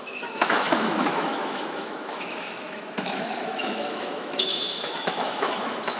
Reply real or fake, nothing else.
fake